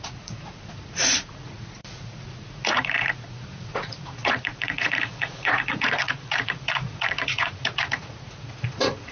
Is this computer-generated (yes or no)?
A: yes